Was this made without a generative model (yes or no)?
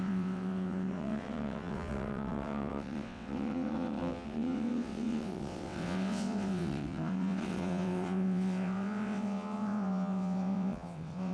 no